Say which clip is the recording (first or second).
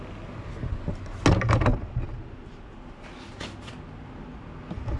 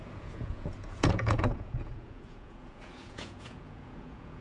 first